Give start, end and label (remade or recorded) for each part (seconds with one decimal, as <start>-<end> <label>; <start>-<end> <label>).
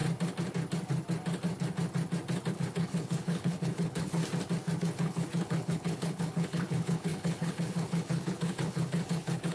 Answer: 0.0-2.5 recorded; 2.5-4.2 remade; 4.2-4.8 recorded; 4.8-9.5 remade